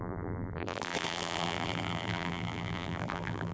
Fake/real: fake